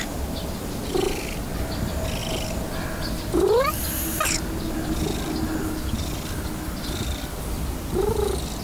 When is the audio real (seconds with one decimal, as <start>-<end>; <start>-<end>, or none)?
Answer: 0.0-8.6